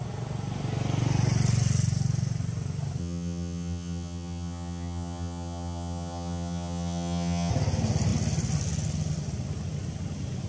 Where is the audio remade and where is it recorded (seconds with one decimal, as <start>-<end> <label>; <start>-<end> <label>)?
0.0-3.0 recorded; 3.0-7.5 remade; 7.5-10.5 recorded